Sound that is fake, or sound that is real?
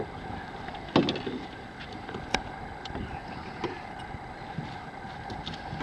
real